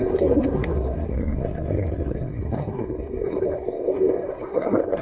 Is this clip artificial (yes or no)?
yes